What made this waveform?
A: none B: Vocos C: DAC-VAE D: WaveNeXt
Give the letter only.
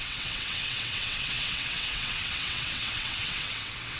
D